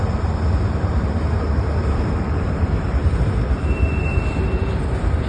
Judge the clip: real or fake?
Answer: fake